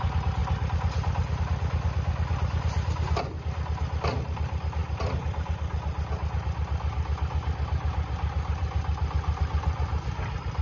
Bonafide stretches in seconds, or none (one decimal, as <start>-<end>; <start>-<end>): 0.0-10.6